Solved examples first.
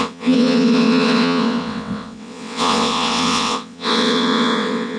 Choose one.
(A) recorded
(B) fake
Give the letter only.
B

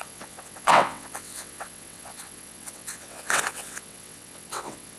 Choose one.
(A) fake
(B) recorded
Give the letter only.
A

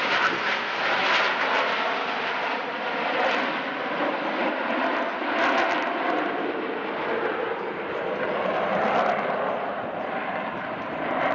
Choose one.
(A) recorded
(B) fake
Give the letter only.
A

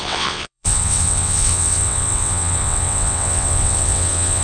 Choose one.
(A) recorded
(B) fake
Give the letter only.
B